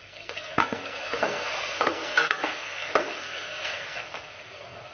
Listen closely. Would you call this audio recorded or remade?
remade